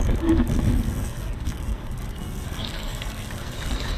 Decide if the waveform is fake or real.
fake